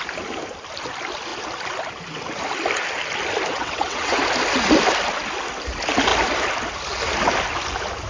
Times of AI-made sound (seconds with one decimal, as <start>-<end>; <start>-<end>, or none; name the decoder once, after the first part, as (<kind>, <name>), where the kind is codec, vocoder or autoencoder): 3.5-4.2 (vocoder, WaveNeXt)